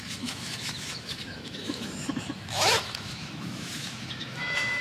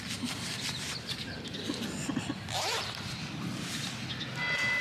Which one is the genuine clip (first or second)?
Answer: second